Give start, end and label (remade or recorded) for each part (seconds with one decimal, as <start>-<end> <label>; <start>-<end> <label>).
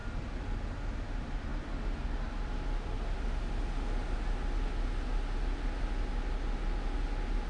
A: 0.0-7.5 recorded